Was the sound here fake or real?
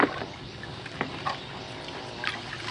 real